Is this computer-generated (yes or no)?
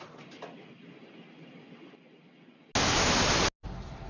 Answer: no